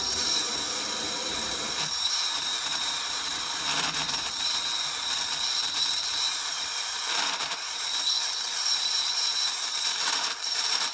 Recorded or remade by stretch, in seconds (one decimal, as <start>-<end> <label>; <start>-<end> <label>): 0.0-4.7 remade; 4.7-6.1 recorded; 6.1-10.9 remade